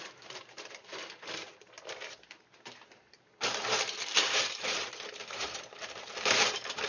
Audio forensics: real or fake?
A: fake